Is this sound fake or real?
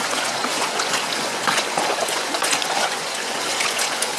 fake